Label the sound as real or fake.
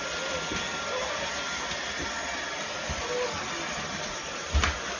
real